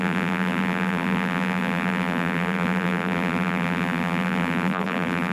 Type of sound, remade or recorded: remade